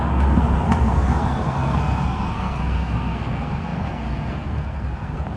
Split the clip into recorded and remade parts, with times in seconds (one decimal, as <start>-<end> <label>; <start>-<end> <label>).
0.0-5.4 remade